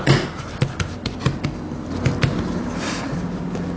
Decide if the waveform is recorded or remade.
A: remade